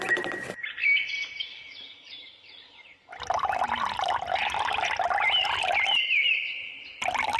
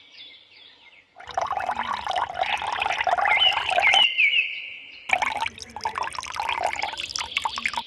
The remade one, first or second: first